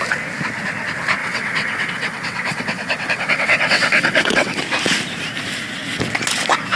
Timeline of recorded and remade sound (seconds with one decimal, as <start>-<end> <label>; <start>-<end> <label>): 0.0-1.2 recorded; 1.2-4.6 remade; 4.6-6.8 recorded